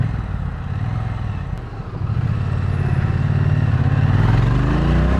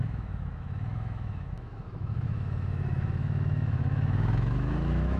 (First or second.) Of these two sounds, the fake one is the second